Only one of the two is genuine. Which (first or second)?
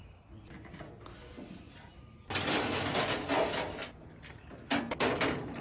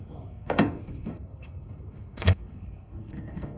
first